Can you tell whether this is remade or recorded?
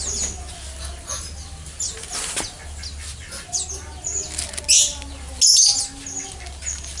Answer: recorded